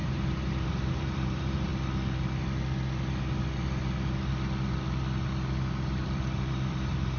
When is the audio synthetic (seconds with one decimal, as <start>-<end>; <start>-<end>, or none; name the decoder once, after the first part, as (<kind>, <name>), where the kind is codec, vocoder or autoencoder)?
0.0-1.7 (vocoder, BigVGAN v2); 6.0-7.2